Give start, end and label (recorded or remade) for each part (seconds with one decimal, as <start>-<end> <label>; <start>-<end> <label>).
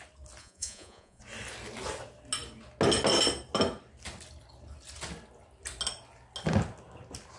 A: 0.0-0.4 recorded; 0.4-1.2 remade; 1.2-7.4 recorded